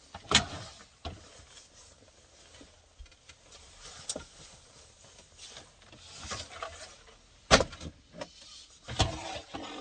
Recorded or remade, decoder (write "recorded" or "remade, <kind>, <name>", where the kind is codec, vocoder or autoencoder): recorded